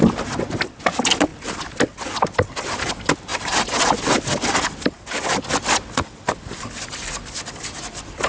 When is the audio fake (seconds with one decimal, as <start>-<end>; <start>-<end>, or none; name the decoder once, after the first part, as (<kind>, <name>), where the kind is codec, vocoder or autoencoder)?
none